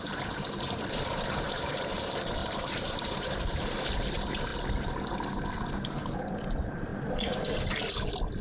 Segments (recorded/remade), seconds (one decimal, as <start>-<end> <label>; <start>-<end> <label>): 0.0-4.5 remade; 4.5-5.9 recorded; 5.9-6.9 remade; 6.9-8.4 recorded